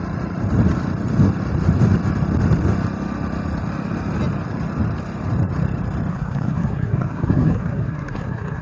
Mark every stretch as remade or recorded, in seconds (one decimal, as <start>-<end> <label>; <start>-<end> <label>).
0.0-6.1 recorded; 6.1-8.6 remade